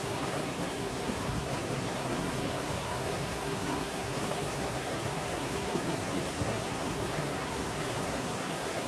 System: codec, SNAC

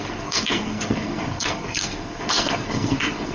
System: codec, SNAC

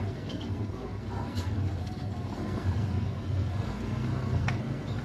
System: codec, SNAC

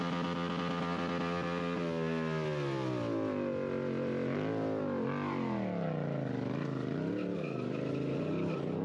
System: none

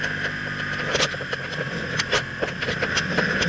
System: none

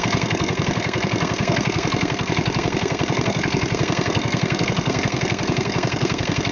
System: codec, SNAC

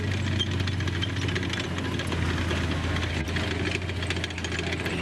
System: none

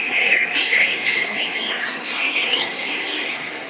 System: codec, SNAC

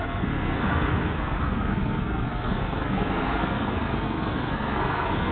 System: codec, SNAC